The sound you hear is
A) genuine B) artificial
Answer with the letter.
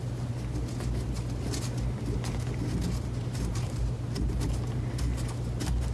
A